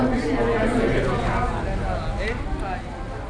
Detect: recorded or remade recorded